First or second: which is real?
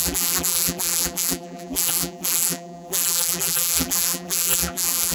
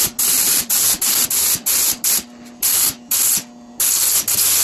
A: second